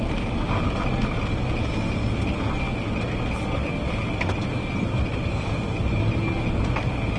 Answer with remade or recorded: recorded